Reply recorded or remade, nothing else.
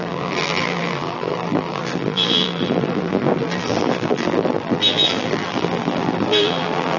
remade